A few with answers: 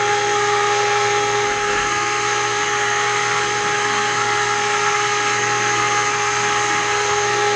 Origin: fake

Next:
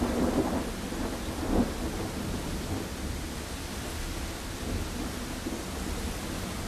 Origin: real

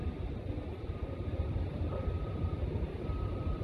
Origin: fake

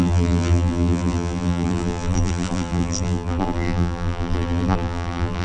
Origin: fake